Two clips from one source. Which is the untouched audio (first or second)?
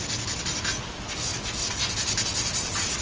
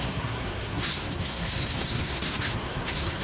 first